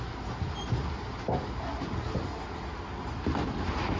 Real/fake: real